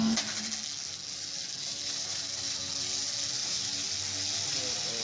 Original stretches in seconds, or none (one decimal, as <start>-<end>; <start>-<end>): 0.0-3.4; 3.9-5.0